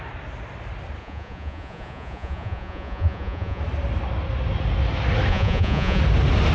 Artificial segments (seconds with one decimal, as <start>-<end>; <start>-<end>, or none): 1.0-3.6; 5.3-6.0